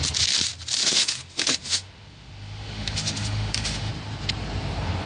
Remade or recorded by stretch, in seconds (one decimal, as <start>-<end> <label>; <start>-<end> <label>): 0.0-0.8 recorded; 0.8-3.9 remade; 3.9-5.1 recorded